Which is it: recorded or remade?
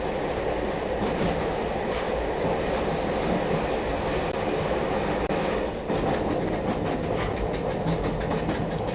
recorded